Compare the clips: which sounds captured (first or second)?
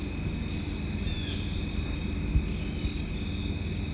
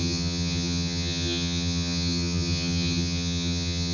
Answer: first